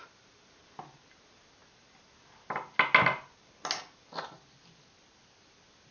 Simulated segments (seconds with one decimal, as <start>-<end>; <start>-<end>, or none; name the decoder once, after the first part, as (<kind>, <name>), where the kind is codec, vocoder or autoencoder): none